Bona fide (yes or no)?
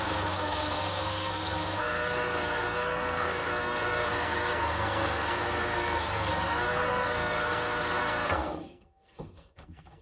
no